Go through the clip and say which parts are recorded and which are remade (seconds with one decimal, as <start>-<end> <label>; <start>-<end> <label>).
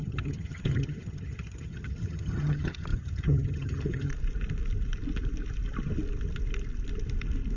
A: 0.0-4.1 remade; 4.1-7.6 recorded